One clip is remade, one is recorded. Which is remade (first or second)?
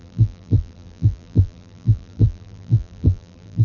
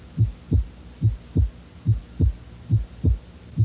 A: first